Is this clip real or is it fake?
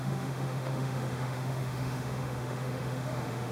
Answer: fake